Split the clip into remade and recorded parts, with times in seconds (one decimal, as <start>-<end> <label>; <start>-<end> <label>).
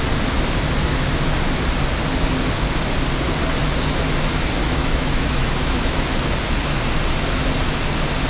0.0-4.6 recorded; 4.6-6.3 remade; 6.3-8.3 recorded